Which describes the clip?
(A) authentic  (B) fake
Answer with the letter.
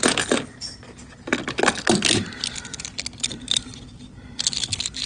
A